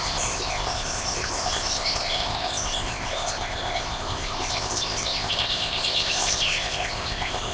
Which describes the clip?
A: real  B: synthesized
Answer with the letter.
B